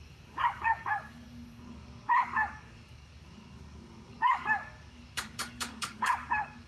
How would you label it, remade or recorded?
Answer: remade